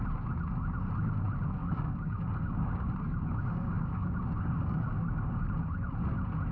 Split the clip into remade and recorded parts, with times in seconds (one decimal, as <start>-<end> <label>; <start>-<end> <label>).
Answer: 0.0-1.6 recorded; 1.6-5.5 remade; 5.5-6.5 recorded